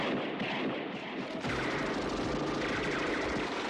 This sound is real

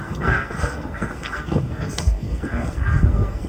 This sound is fake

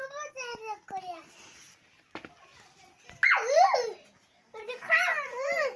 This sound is real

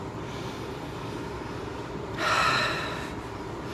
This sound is real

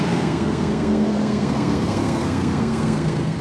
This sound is fake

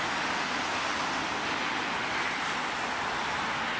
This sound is real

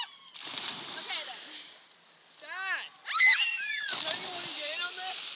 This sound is real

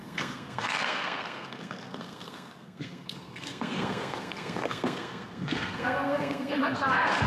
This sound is fake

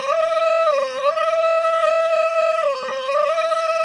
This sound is fake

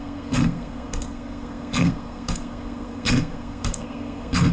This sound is fake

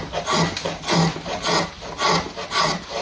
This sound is real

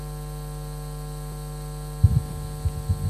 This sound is real